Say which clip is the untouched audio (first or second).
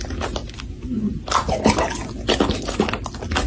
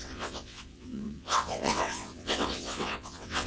first